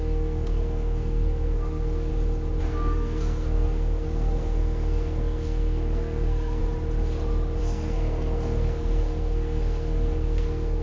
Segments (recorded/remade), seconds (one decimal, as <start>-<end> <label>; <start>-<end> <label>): 0.0-2.1 remade; 2.1-2.6 recorded; 2.6-6.6 remade; 6.6-7.6 recorded; 7.6-10.8 remade